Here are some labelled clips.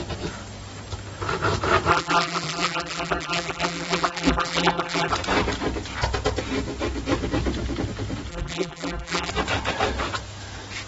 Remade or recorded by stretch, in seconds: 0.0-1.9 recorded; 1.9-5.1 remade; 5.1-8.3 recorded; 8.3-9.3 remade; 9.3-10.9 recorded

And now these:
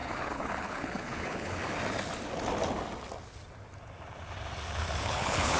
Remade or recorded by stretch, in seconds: 0.0-1.6 remade; 1.6-5.0 recorded; 5.0-5.6 remade

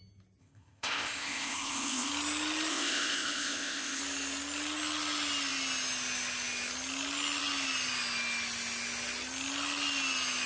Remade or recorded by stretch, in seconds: 0.0-0.4 recorded; 0.4-2.1 remade; 2.1-2.7 recorded; 2.7-4.0 remade; 4.0-10.5 recorded

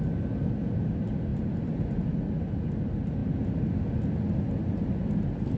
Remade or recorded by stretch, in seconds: 0.0-5.6 recorded

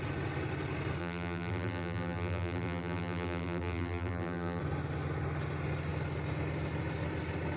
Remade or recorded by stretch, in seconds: 0.0-1.0 recorded; 1.0-4.6 remade; 4.6-7.6 recorded

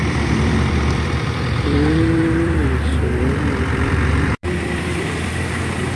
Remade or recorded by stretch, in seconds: 0.0-2.6 remade; 2.6-3.2 recorded; 3.2-6.0 remade

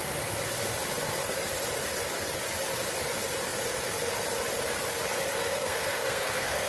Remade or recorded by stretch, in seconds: 0.0-5.4 recorded; 5.4-6.7 remade

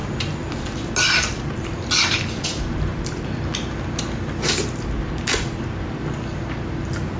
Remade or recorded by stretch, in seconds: 0.0-7.2 recorded